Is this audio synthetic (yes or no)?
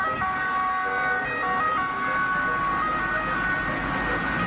no